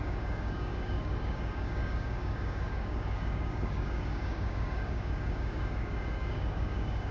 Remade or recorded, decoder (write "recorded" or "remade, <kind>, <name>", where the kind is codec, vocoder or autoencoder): remade, codec, DAC